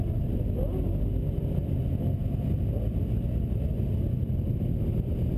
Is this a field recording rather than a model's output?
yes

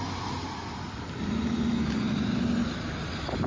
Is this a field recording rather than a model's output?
yes